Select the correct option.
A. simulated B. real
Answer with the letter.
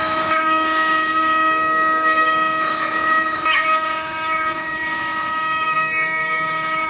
A